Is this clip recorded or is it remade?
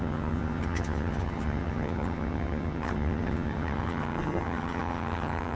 remade